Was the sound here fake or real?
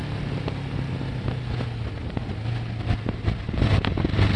real